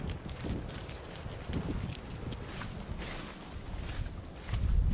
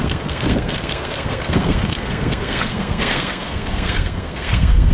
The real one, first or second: first